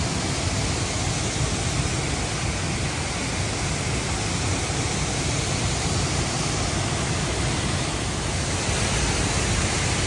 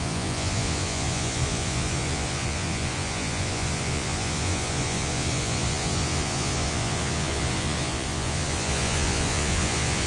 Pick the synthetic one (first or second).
second